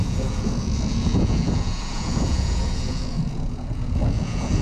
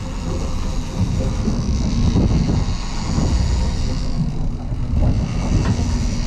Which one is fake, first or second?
first